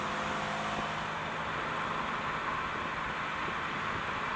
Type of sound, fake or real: real